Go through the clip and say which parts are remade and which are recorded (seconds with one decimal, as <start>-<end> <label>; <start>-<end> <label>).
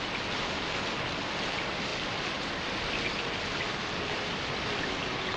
0.0-5.4 recorded